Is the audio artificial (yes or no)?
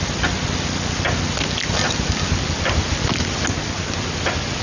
no